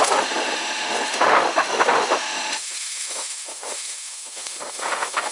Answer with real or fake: fake